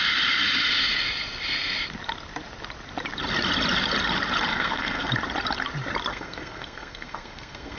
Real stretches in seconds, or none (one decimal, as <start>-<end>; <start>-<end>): 0.0-4.5; 5.1-6.1